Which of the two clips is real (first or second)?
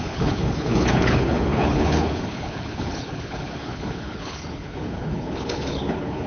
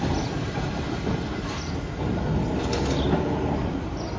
second